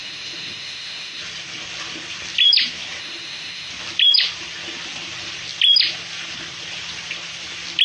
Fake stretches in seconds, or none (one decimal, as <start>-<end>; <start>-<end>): 0.0-1.2; 3.0-3.7